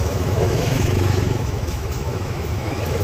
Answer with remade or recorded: remade